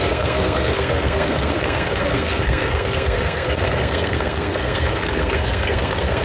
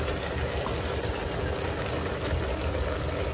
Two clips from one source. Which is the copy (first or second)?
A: first